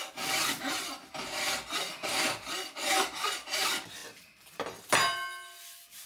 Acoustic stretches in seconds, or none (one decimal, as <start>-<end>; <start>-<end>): 4.0-6.1